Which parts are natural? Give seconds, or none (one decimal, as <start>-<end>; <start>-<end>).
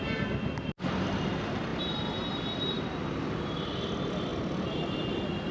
0.0-5.5